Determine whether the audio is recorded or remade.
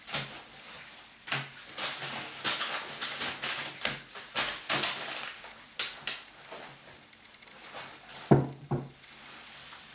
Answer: recorded